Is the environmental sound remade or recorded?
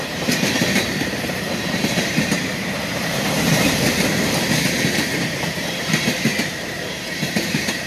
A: remade